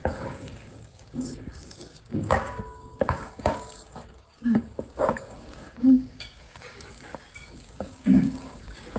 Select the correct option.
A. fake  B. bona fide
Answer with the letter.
A